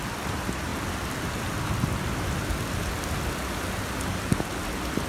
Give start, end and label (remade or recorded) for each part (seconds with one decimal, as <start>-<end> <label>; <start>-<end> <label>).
0.0-5.1 recorded